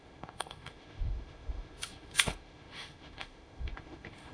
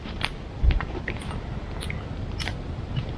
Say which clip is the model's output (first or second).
first